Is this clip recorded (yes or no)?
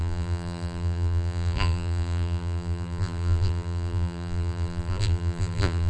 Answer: no